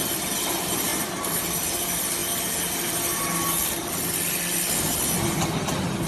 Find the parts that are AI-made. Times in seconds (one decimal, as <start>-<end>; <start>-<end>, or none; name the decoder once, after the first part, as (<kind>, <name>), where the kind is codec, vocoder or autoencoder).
none